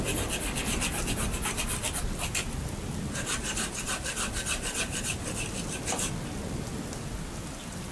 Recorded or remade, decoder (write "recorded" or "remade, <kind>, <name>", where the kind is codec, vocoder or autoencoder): recorded